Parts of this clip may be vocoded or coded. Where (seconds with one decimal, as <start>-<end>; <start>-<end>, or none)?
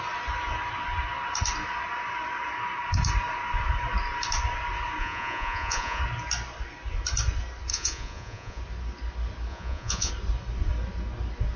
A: 5.0-6.0; 7.7-8.6; 9.5-10.1